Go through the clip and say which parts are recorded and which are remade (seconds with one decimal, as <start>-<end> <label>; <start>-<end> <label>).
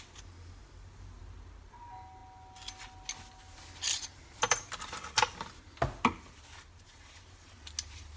0.0-8.2 recorded